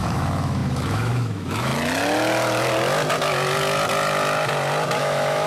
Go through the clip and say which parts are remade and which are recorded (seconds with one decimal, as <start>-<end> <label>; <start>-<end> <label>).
0.0-1.7 remade; 1.7-5.0 recorded; 5.0-5.5 remade

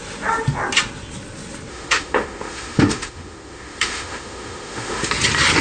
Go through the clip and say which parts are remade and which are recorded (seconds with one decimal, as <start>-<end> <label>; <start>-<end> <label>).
0.0-1.7 recorded; 1.7-5.1 remade; 5.1-5.6 recorded